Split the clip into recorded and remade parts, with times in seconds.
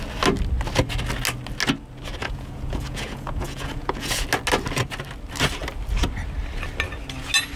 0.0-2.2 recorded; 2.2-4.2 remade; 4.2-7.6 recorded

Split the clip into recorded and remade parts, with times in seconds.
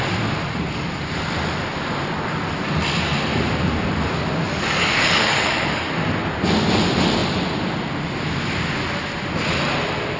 0.0-4.5 recorded; 4.5-5.9 remade; 5.9-10.2 recorded